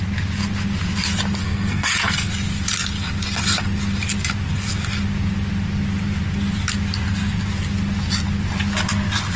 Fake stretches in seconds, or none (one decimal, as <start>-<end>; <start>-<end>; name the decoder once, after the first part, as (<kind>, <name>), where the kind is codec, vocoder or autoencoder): 1.4-2.3 (codec, SNAC)